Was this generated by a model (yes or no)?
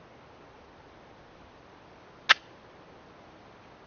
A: no